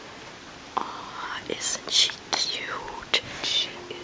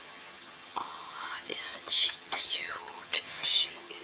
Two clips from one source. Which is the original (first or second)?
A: first